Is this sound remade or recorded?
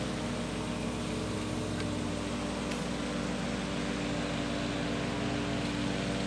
recorded